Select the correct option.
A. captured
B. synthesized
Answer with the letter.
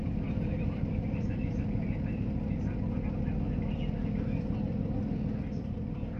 B